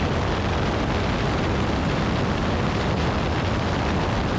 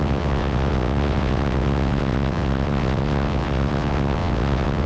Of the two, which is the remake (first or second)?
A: second